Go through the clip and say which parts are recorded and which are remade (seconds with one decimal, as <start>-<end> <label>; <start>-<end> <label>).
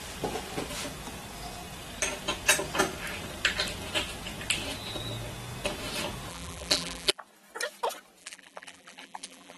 0.0-6.3 recorded; 6.3-7.2 remade; 7.2-8.2 recorded; 8.2-9.6 remade